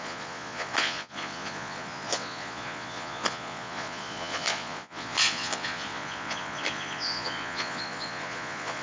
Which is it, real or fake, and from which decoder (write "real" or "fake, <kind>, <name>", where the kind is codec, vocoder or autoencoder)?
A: fake, vocoder, Vocos